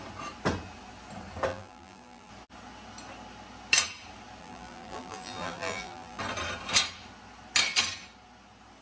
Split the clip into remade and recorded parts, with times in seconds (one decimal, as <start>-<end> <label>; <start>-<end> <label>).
0.0-1.5 recorded; 1.5-2.3 remade; 2.3-4.4 recorded; 4.4-6.2 remade; 6.2-8.8 recorded